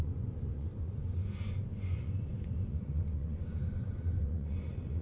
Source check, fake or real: fake